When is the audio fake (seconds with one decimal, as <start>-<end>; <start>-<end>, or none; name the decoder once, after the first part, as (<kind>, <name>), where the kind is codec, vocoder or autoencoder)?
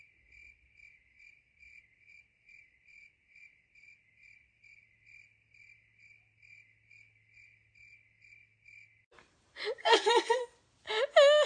9.8-10.4 (codec, SNAC)